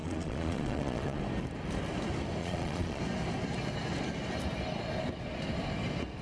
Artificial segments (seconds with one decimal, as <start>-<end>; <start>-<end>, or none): 0.0-1.2; 2.4-3.0